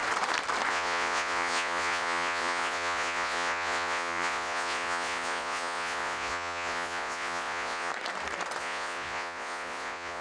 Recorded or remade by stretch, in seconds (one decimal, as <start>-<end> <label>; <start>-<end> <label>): 0.0-0.7 recorded; 0.7-7.9 remade; 7.9-8.6 recorded; 8.6-10.2 remade

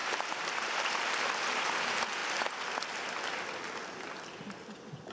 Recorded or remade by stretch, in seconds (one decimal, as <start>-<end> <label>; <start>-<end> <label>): 0.0-2.2 remade; 2.2-5.1 recorded

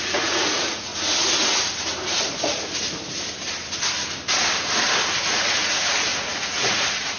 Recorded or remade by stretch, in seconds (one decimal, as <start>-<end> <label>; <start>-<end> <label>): 0.0-0.9 remade; 0.9-5.2 recorded; 5.2-7.2 remade